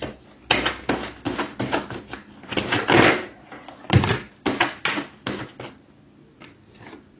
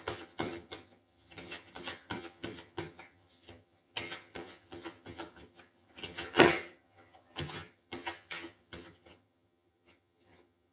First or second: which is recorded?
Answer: first